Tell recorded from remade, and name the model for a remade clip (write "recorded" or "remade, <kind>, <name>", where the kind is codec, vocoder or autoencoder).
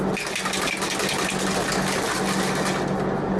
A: recorded